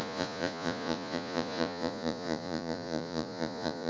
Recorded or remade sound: remade